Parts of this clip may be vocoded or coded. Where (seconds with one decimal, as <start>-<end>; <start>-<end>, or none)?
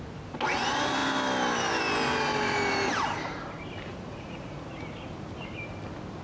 3.9-4.8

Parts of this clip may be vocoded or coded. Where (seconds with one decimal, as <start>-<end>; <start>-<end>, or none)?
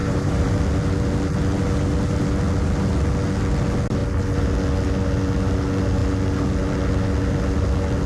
0.0-0.6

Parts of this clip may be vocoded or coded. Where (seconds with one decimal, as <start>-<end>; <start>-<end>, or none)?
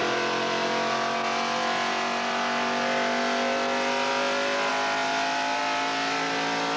none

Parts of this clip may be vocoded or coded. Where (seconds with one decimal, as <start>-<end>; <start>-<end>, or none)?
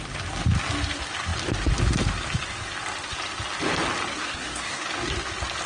4.1-4.8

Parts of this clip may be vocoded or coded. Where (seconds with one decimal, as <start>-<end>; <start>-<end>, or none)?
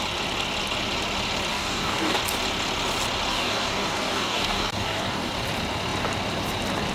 1.5-2.2; 3.3-5.3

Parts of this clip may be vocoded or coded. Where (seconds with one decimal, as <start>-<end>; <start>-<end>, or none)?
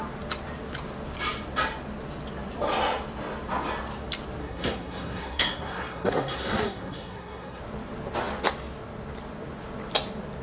4.4-7.6